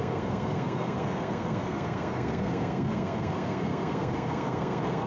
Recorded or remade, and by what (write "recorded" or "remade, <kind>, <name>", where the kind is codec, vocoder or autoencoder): remade, codec, SNAC